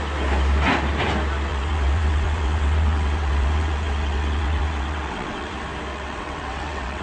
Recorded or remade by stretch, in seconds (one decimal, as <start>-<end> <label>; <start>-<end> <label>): 0.0-1.5 recorded; 1.5-5.5 remade; 5.5-5.9 recorded; 5.9-7.0 remade